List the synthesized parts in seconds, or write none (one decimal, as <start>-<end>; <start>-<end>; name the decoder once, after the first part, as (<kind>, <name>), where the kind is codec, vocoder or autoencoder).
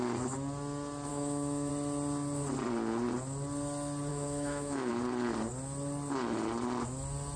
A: 1.1-1.7 (autoencoder, DAC-VAE); 4.1-4.9